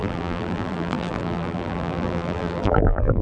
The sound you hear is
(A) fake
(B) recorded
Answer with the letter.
A